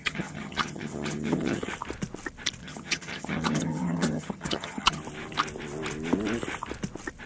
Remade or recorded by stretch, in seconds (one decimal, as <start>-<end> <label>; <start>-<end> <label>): 0.0-1.7 remade; 1.7-2.6 recorded; 2.6-5.0 remade; 5.0-7.3 recorded